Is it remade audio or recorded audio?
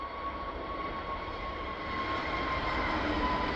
remade